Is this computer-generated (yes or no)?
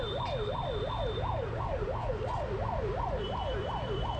no